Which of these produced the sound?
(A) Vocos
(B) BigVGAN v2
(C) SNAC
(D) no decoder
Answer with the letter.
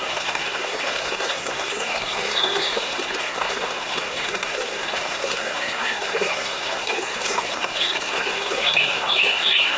C